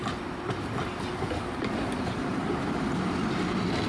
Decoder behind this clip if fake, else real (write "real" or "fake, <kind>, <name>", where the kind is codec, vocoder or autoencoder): real